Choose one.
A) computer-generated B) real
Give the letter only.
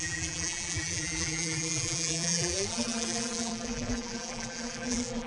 A